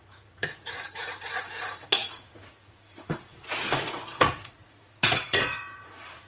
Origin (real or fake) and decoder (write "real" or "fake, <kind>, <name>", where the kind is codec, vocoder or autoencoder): fake, vocoder, Vocos